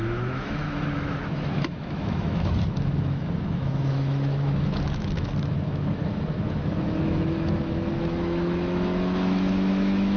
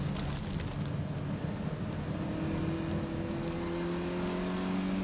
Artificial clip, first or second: first